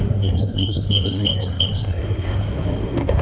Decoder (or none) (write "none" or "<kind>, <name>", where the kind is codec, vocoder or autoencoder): codec, SNAC